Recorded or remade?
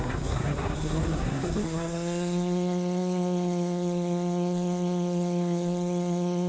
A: remade